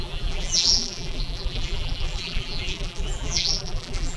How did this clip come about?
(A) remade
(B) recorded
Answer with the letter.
A